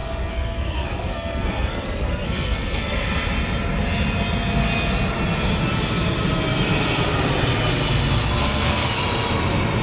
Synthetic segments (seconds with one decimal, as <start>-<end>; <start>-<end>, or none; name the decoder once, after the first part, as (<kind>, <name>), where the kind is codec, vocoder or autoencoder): 0.0-3.0 (codec, SNAC); 8.4-9.0